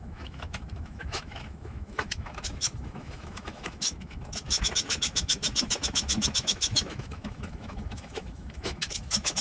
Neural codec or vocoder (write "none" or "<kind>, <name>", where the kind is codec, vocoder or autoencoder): autoencoder, DAC-VAE